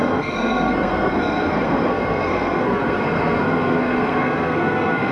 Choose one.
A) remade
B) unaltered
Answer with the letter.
A